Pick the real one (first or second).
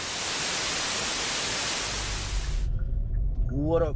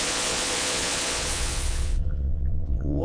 first